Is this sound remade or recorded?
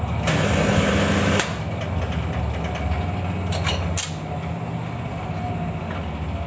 recorded